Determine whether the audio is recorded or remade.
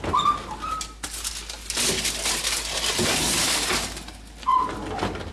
recorded